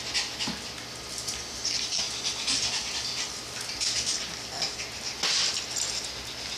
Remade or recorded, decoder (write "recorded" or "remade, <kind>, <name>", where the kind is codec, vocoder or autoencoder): recorded